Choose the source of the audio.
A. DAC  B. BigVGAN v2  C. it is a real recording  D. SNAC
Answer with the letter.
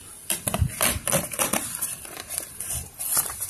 B